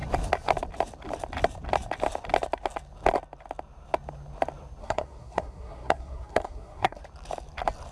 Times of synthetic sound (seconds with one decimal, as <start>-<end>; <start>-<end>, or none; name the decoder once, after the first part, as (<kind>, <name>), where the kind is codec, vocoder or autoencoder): 4.8-7.0 (codec, SNAC)